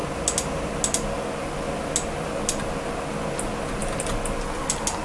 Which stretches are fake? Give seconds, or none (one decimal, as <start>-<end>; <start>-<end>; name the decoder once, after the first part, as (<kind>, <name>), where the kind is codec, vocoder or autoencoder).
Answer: none